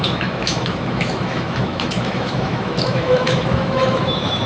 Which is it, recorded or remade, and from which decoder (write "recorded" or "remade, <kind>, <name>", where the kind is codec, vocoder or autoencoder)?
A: remade, autoencoder, DAC-VAE